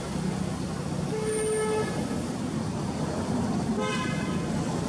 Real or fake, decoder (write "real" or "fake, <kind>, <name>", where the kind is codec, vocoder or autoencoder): real